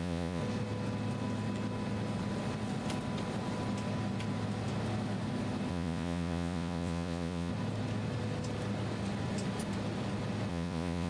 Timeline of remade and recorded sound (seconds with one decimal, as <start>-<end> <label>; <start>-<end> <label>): 0.0-0.4 remade; 0.4-5.7 recorded; 5.7-7.5 remade; 7.5-10.5 recorded; 10.5-11.1 remade